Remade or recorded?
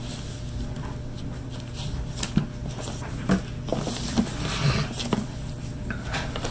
recorded